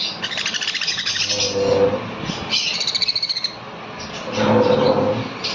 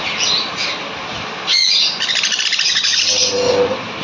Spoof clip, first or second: second